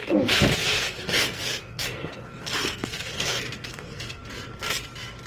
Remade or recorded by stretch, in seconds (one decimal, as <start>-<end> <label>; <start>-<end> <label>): 0.0-4.2 remade; 4.2-5.3 recorded